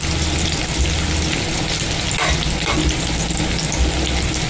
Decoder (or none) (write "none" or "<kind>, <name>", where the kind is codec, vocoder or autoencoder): none